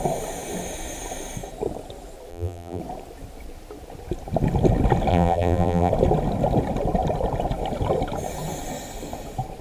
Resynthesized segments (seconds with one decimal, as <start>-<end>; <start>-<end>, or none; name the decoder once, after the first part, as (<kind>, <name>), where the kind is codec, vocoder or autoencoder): 2.3-2.8 (vocoder, BigVGAN v2); 5.1-5.9